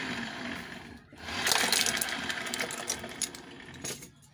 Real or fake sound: real